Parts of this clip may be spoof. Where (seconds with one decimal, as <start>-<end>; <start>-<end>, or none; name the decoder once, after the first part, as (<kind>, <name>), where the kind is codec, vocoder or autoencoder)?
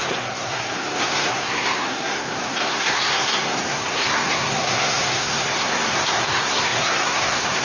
0.0-7.6 (codec, SNAC)